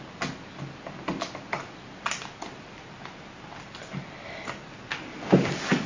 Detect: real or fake real